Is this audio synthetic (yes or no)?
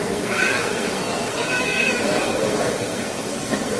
yes